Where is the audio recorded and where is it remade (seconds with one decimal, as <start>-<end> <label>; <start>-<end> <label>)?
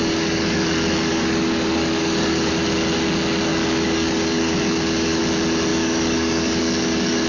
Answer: 0.0-2.5 remade; 2.5-3.5 recorded; 3.5-5.2 remade; 5.2-5.7 recorded; 5.7-7.3 remade